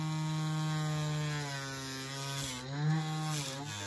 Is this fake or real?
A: real